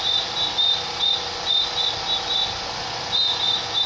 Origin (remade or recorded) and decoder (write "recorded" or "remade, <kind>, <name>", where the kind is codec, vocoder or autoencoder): recorded